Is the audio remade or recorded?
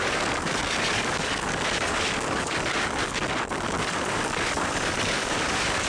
remade